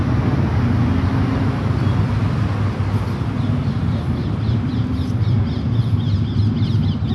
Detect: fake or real real